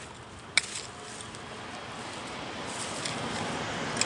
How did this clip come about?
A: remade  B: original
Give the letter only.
B